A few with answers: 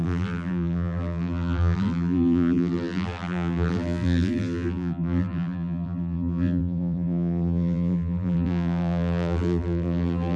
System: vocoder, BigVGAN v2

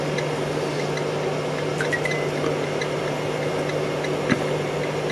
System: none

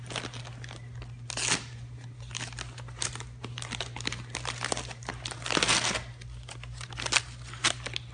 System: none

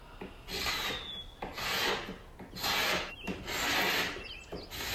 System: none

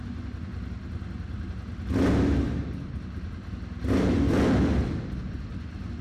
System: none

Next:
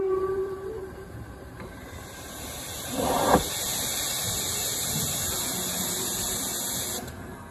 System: vocoder, BigVGAN v2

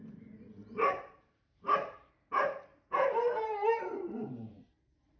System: vocoder, BigVGAN v2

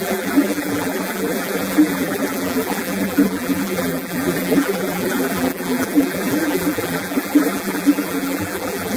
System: vocoder, BigVGAN v2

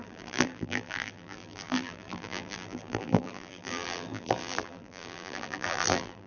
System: vocoder, BigVGAN v2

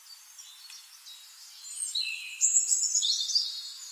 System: none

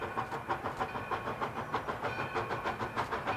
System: none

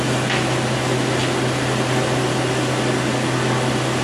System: none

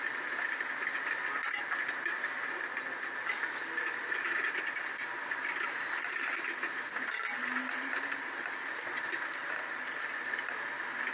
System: none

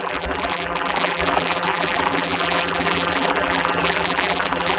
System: vocoder, BigVGAN v2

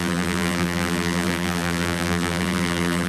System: vocoder, BigVGAN v2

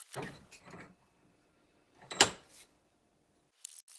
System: none